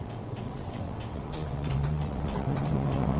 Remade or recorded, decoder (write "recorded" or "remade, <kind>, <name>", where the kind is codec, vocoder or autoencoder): remade, vocoder, WaveNeXt